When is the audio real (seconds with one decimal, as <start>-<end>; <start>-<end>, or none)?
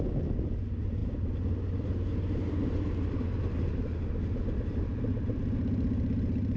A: 0.0-6.6